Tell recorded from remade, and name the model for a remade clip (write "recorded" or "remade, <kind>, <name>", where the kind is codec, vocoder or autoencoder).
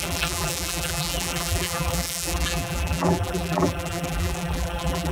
remade, vocoder, BigVGAN v2